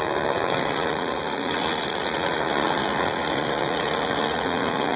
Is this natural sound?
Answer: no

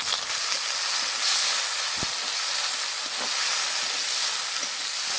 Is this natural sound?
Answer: yes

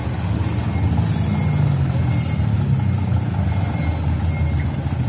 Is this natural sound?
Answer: yes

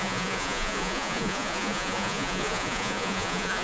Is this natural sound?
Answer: no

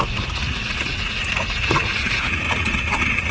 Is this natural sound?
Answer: no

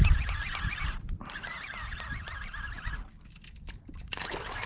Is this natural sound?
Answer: yes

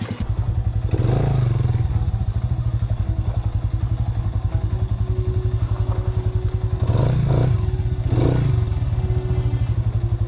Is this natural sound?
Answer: yes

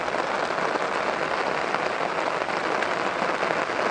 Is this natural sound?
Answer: yes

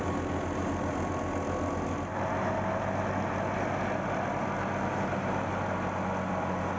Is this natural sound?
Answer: yes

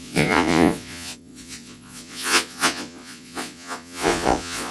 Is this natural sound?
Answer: no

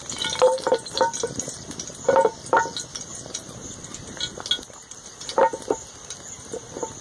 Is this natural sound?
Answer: yes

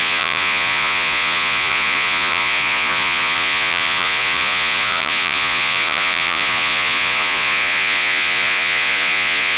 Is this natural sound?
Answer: no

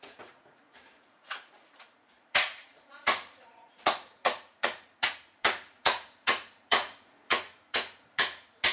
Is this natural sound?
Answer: no